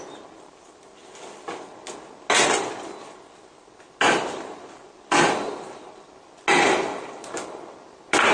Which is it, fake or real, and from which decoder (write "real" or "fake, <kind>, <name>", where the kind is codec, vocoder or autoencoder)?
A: real